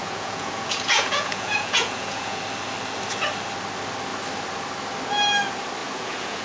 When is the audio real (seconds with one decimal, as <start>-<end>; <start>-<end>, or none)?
2.4-5.8